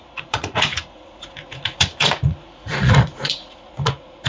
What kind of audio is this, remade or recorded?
remade